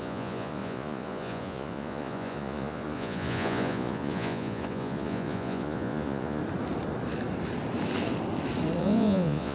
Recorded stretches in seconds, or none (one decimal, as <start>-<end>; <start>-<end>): 6.4-8.8